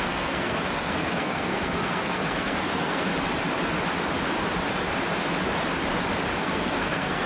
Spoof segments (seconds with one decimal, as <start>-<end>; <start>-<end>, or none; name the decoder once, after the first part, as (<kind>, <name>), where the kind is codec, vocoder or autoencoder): 0.0-3.1 (codec, SNAC); 6.4-7.3